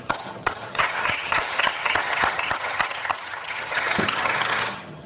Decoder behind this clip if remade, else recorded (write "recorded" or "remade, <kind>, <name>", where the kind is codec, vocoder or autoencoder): remade, vocoder, HiFi-GAN